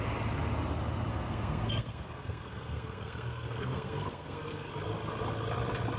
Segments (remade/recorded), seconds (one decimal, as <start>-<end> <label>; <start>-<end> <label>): 0.0-1.1 recorded; 1.1-4.7 remade; 4.7-6.0 recorded